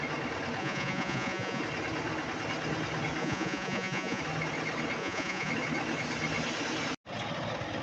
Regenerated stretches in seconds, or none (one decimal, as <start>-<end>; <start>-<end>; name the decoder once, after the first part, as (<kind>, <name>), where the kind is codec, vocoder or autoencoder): 0.6-1.6 (vocoder, Vocos); 3.2-4.2; 5.0-5.5